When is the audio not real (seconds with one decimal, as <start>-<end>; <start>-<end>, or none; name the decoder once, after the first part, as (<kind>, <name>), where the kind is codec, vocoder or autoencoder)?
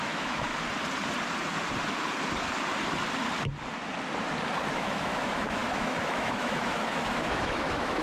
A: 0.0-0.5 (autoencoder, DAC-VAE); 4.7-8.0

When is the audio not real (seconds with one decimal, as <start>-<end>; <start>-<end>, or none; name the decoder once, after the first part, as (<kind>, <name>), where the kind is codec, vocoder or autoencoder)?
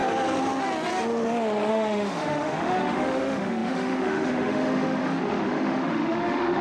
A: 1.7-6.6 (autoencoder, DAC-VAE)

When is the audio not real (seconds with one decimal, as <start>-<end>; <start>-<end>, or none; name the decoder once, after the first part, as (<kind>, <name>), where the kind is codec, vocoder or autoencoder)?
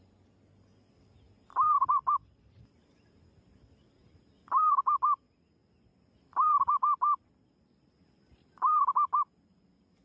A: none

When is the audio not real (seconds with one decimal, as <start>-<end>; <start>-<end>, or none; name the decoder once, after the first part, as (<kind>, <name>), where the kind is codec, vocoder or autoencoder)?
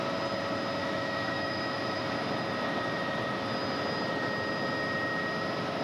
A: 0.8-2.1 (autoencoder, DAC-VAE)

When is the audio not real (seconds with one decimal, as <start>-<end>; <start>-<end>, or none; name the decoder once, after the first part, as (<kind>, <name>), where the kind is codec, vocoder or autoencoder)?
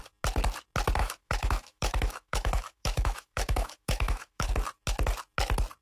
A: 1.0-4.5 (autoencoder, DAC-VAE)